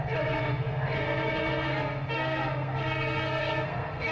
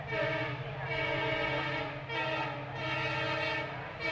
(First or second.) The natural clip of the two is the second